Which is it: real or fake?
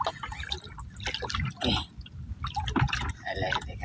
real